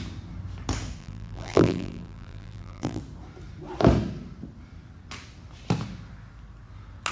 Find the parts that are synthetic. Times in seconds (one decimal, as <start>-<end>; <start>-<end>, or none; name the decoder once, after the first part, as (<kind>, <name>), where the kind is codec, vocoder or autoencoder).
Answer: 1.0-3.0 (vocoder, BigVGAN v2)